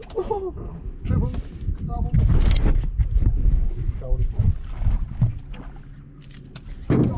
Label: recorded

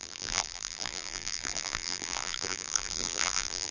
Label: remade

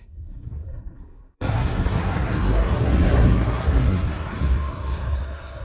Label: remade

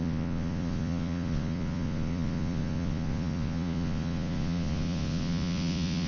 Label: remade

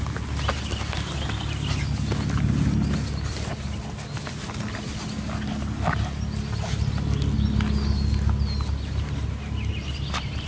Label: recorded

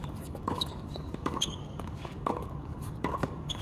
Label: remade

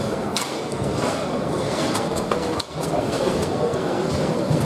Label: remade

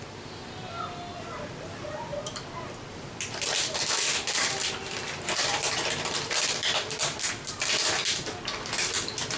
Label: recorded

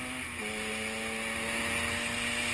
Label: recorded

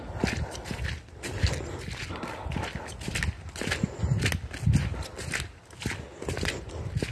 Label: recorded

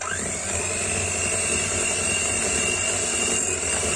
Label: recorded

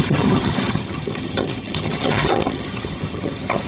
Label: remade